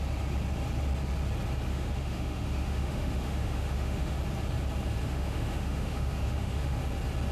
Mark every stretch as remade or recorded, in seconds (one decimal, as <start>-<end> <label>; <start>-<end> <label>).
0.0-1.7 recorded; 1.7-4.2 remade; 4.2-5.0 recorded; 5.0-6.8 remade; 6.8-7.3 recorded